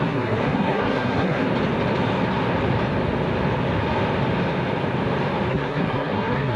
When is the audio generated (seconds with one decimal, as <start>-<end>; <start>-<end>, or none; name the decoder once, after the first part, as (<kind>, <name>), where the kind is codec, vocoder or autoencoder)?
0.0-1.5 (codec, SNAC); 5.5-6.6